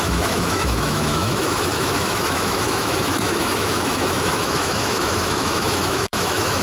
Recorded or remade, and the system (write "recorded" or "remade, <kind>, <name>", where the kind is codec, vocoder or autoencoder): remade, autoencoder, DAC-VAE